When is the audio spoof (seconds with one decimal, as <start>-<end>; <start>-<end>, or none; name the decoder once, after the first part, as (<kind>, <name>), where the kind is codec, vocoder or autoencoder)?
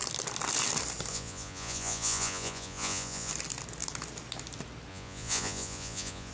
1.1-3.3 (vocoder, Vocos); 4.9-6.3